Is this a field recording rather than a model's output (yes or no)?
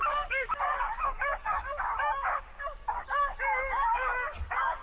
no